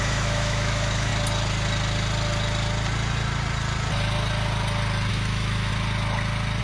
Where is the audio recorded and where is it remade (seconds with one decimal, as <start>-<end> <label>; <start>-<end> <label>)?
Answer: 0.0-1.1 remade; 1.1-5.1 recorded; 5.1-5.7 remade; 5.7-6.6 recorded

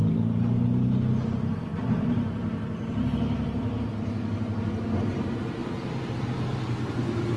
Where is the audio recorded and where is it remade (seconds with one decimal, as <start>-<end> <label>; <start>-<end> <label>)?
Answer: 0.0-7.4 recorded

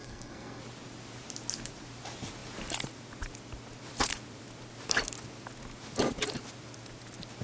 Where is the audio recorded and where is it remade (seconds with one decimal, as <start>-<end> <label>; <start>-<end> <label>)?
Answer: 0.0-0.6 remade; 0.6-7.4 recorded

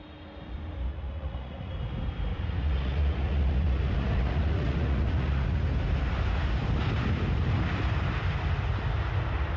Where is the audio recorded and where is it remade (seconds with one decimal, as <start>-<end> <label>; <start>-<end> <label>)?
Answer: 0.0-0.9 recorded; 0.9-1.7 remade; 1.7-2.3 recorded; 2.3-5.6 remade; 5.6-9.6 recorded